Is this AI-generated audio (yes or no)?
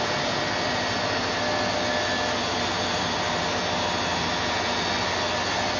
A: no